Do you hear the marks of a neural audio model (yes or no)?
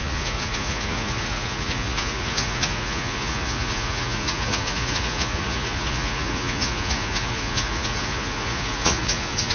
yes